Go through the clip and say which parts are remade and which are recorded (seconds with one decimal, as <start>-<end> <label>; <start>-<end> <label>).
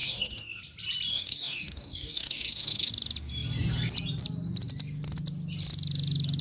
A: 0.0-0.6 remade; 0.6-1.1 recorded; 1.1-2.9 remade; 2.9-6.4 recorded